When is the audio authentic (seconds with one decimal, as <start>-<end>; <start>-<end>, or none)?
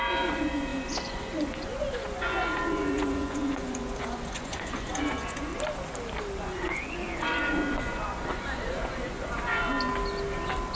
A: 5.5-6.4; 9.7-10.7